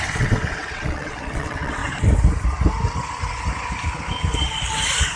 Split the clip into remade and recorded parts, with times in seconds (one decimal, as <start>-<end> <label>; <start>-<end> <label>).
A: 0.0-1.8 remade; 1.8-5.2 recorded